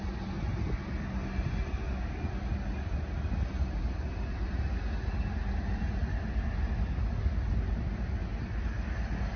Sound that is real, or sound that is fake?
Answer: real